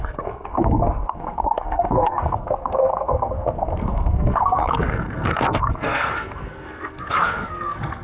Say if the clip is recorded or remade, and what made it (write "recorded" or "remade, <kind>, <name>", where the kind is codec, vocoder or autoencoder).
remade, codec, SNAC